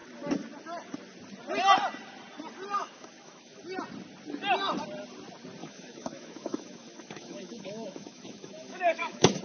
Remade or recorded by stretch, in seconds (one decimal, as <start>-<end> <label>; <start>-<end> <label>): 0.0-2.8 recorded; 2.8-3.6 remade; 3.6-5.6 recorded; 5.6-9.4 remade